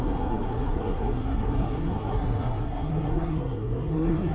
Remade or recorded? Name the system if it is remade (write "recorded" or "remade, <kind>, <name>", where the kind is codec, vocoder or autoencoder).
remade, codec, SNAC